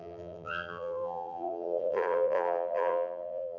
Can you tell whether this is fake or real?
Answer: fake